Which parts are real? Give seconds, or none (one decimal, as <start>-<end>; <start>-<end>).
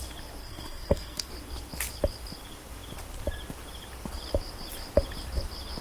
0.0-0.4; 1.3-5.8